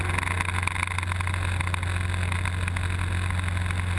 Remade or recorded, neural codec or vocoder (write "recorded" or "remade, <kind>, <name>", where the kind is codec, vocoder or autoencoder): recorded